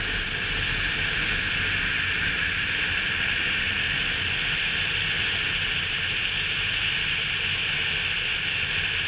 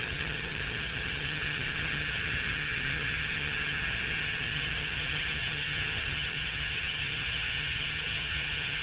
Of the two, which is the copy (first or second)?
second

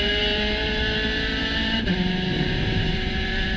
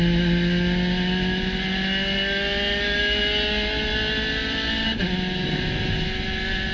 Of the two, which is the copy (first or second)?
first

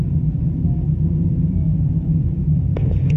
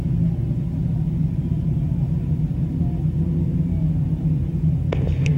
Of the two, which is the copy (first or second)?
first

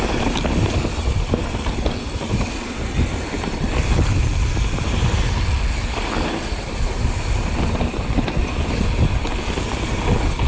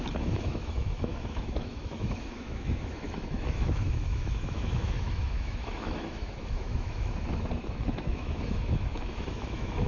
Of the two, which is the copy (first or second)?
second